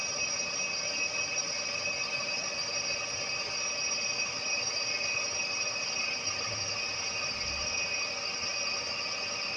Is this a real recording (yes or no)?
yes